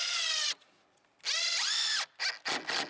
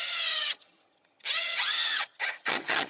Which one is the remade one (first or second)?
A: second